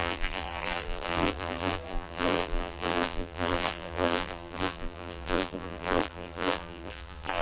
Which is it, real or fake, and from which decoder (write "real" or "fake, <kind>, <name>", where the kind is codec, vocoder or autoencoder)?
fake, vocoder, BigVGAN v2